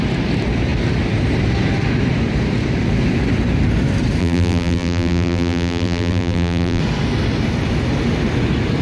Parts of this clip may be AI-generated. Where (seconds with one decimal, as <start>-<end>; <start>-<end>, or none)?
4.2-6.8